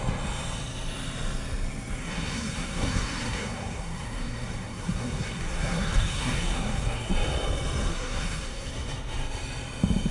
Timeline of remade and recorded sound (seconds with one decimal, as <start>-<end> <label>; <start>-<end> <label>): 0.0-2.0 recorded; 2.0-7.1 remade; 7.1-7.9 recorded; 7.9-8.7 remade; 8.7-10.1 recorded